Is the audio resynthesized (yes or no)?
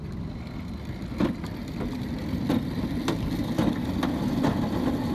no